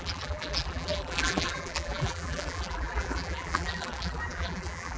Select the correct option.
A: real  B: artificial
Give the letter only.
B